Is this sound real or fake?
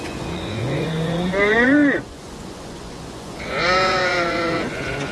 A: fake